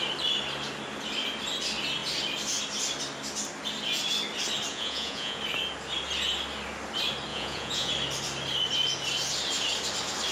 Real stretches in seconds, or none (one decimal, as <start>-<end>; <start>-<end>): 0.0-4.7; 5.4-7.3; 7.9-10.3